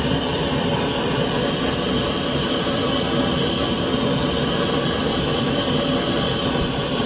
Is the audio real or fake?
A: real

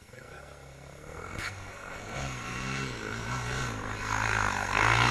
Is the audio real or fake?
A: fake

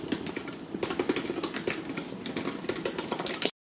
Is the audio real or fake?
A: real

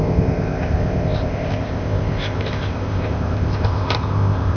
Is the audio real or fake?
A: fake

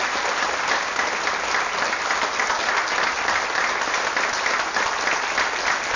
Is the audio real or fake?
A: real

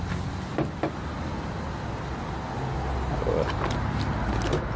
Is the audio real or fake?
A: real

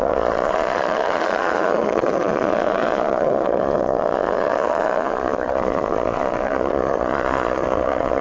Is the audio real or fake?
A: fake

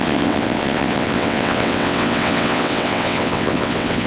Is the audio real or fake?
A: fake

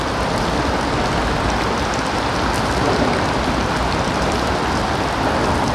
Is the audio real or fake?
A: real